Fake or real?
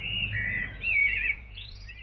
fake